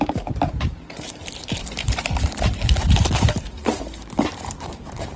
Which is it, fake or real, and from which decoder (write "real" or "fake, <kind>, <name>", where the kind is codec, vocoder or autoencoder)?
fake, vocoder, BigVGAN v2